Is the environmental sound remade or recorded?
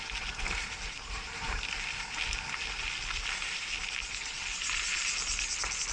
recorded